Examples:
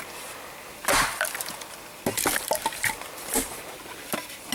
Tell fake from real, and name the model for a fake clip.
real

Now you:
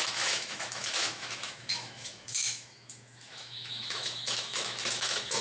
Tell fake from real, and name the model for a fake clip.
fake, autoencoder, DAC-VAE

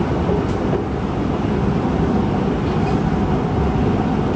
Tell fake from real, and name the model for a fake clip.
real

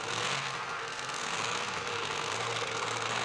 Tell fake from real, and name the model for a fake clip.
fake, codec, SNAC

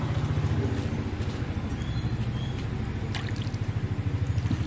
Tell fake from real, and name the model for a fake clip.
real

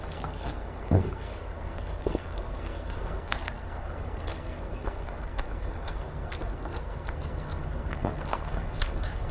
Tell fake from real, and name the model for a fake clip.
fake, codec, SNAC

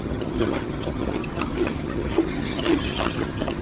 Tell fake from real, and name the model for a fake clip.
fake, vocoder, HiFi-GAN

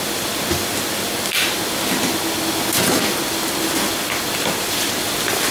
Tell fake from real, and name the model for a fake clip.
real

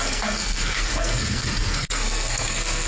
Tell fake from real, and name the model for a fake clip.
fake, codec, SNAC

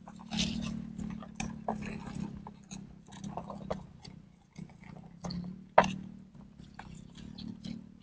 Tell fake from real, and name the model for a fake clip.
real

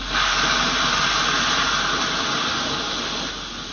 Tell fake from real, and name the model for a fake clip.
real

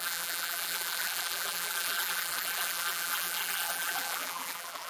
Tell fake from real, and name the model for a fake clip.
fake, vocoder, BigVGAN v2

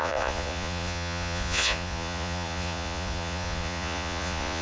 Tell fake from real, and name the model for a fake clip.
fake, vocoder, Vocos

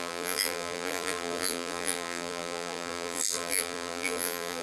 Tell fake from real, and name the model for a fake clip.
fake, vocoder, BigVGAN v2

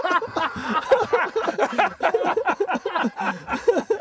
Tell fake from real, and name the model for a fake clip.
real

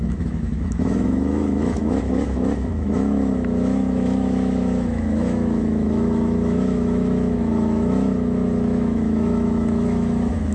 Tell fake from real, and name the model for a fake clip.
fake, autoencoder, DAC-VAE